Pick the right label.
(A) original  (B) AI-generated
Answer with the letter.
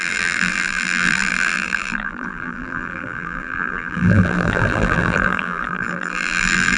B